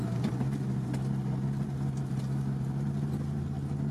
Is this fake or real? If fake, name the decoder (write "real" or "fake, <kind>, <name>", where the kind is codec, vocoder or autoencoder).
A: real